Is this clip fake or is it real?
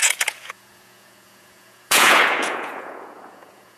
fake